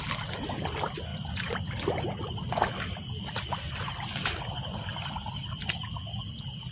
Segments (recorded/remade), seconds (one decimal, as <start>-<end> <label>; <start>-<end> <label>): 0.0-6.7 recorded